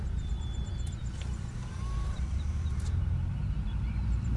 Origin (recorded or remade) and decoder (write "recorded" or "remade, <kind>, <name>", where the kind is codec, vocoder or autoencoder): remade, vocoder, BigVGAN v2